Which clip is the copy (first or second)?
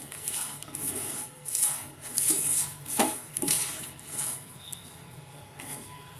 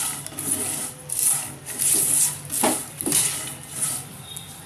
first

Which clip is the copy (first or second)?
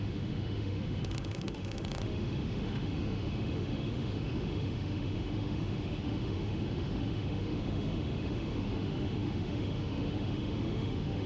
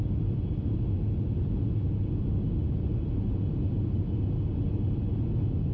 first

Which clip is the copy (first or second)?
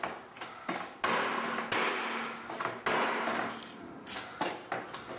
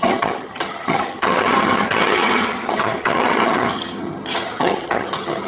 second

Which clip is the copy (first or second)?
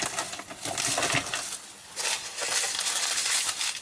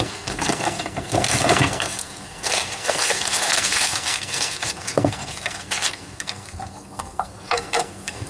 second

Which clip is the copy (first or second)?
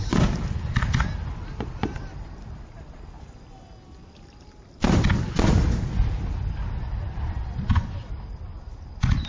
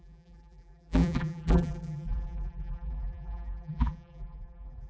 second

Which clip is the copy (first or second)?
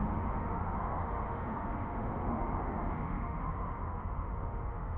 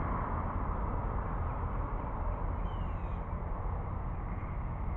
first